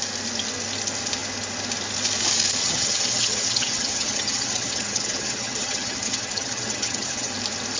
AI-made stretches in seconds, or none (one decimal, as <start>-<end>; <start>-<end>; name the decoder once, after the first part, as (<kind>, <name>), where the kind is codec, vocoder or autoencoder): 2.6-7.3 (vocoder, HiFi-GAN)